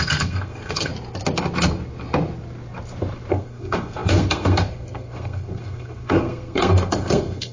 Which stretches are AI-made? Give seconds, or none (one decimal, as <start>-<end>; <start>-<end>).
0.0-0.9; 3.3-7.5